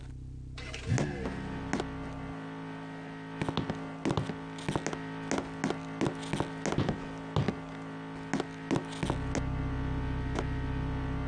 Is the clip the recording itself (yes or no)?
yes